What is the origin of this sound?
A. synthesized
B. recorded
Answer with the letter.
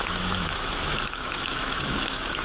A